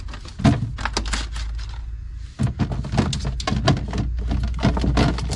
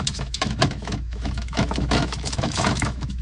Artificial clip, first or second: second